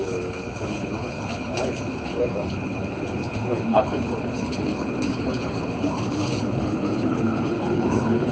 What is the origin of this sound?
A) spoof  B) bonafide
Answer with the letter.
A